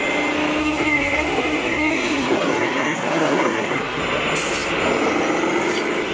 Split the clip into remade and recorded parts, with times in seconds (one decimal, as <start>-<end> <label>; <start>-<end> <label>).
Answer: 0.0-0.6 recorded; 0.6-4.0 remade; 4.0-6.1 recorded